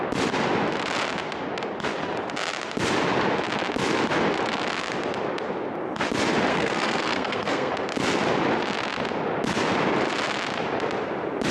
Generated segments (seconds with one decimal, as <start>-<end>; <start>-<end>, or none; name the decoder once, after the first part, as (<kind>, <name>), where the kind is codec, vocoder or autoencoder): 6.5-7.7 (codec, SNAC)